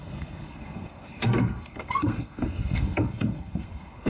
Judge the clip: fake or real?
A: fake